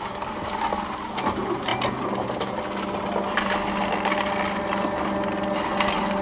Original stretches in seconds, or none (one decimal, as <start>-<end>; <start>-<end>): 0.0-6.2